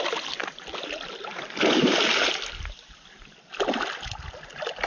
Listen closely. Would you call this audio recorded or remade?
recorded